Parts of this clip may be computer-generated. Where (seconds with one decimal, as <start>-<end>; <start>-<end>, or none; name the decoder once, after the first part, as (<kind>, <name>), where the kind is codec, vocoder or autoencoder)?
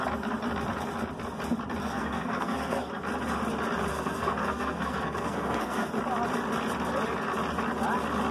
1.8-2.9 (codec, SNAC); 3.9-5.9